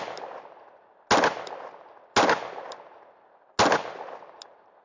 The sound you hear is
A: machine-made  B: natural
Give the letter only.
B